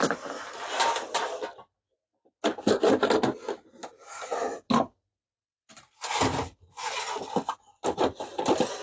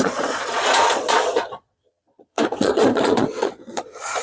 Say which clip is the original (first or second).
first